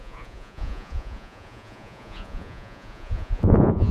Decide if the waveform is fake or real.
fake